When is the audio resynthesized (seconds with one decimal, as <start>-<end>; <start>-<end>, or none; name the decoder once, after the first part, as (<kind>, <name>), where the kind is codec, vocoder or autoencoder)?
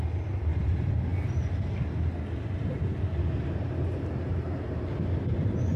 none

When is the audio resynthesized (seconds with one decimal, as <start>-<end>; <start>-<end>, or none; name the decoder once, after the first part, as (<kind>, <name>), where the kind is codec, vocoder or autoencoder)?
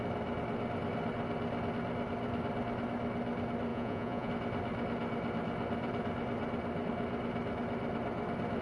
3.7-4.3 (vocoder, Vocos)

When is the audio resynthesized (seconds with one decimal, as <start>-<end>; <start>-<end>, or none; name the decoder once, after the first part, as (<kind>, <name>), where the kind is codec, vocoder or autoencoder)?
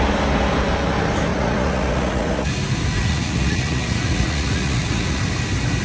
1.3-2.5 (vocoder, Vocos); 3.0-5.2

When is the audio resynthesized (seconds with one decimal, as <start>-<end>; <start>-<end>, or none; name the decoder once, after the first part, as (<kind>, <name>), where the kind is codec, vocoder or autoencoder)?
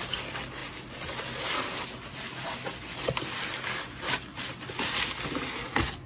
none